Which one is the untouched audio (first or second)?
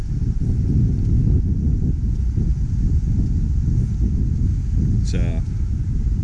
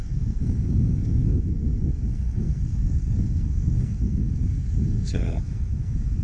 first